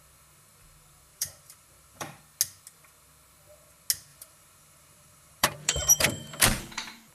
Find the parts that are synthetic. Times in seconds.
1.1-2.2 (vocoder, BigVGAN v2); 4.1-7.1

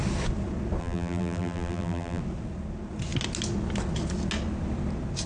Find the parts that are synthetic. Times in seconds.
0.8-2.2 (vocoder, BigVGAN v2)